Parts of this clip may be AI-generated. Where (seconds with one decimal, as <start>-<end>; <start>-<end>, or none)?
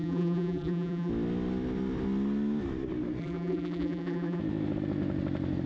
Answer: 0.0-1.1; 3.2-4.4